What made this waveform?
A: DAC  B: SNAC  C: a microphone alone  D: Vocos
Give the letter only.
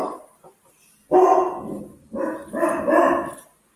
C